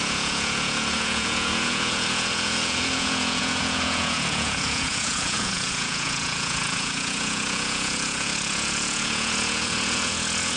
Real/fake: fake